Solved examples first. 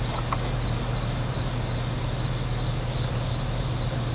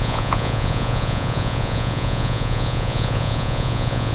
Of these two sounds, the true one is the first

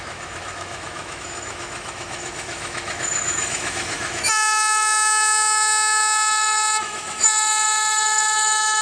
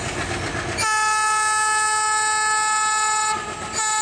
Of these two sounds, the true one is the second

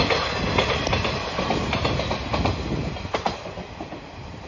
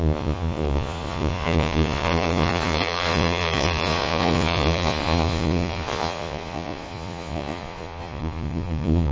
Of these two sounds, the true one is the first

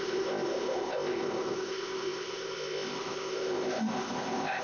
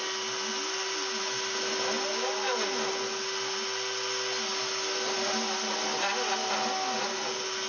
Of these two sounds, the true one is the second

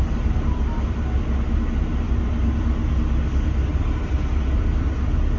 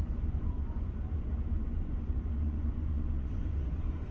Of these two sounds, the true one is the first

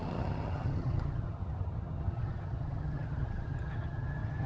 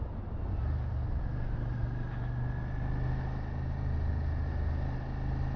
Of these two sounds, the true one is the second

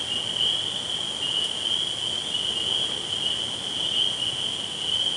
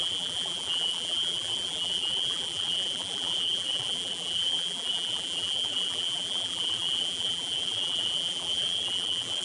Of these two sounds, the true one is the first